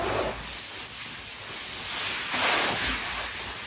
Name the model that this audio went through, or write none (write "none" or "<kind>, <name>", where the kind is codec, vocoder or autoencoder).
none